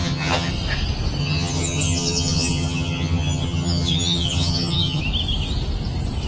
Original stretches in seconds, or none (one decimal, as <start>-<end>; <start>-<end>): 0.5-1.2; 5.0-6.3